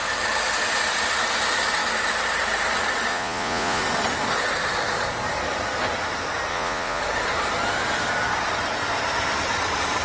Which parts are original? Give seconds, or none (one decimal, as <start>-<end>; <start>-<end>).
0.0-3.1; 3.8-6.5; 7.0-10.0